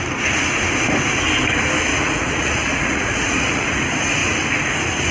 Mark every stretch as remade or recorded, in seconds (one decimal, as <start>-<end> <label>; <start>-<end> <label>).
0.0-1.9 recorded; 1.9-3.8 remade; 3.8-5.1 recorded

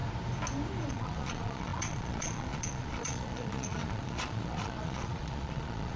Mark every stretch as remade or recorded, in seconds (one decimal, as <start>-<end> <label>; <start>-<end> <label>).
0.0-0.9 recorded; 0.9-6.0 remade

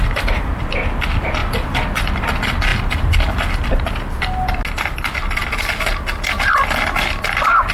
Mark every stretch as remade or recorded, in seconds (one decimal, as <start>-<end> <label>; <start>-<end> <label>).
0.0-7.7 recorded